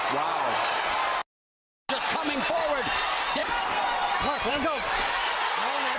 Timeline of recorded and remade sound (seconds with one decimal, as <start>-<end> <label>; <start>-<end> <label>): 0.0-6.0 recorded